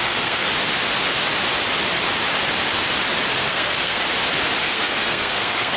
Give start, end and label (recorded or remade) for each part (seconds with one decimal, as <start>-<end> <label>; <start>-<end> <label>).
0.0-0.5 remade; 0.5-3.4 recorded; 3.4-4.0 remade; 4.0-4.6 recorded; 4.6-5.8 remade